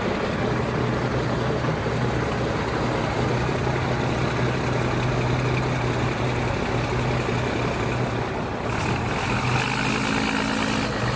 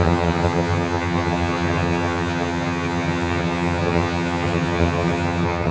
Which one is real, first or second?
first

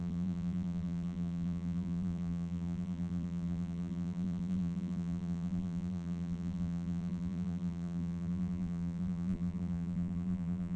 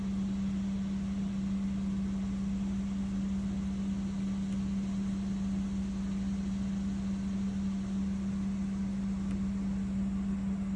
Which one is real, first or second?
second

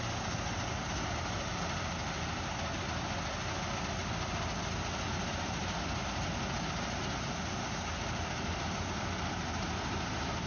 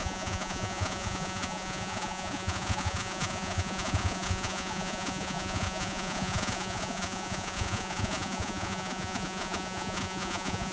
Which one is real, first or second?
first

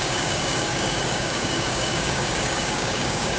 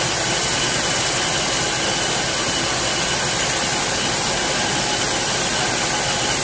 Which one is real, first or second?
second